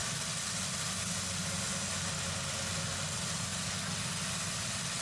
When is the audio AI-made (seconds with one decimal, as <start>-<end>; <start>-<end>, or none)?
none